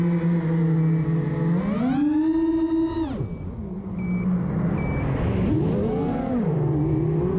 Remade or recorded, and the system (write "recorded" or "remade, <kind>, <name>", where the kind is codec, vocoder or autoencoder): recorded